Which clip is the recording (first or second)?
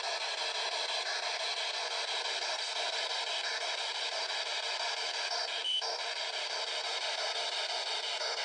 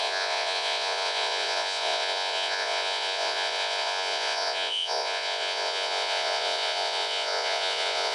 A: first